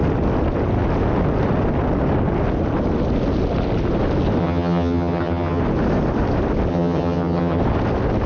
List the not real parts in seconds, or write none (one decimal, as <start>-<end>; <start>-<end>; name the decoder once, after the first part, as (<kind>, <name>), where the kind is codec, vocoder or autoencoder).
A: 4.4-5.6 (vocoder, HiFi-GAN); 6.7-7.6